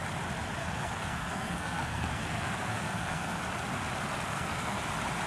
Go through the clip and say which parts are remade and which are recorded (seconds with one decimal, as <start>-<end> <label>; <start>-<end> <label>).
0.0-0.6 recorded; 0.6-3.4 remade; 3.4-4.3 recorded; 4.3-4.8 remade; 4.8-5.3 recorded